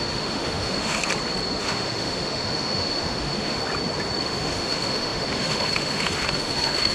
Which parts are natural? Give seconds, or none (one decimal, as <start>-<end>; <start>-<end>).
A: 1.0-1.6; 3.6-4.2